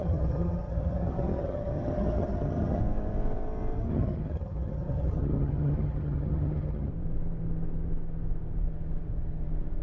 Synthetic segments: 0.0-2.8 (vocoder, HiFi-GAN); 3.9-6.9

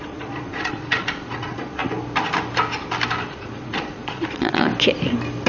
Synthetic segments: 0.0-1.8 (vocoder, Vocos); 3.3-4.7

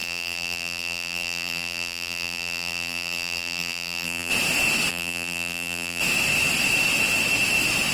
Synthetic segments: 0.0-4.3 (vocoder, BigVGAN v2); 4.9-6.0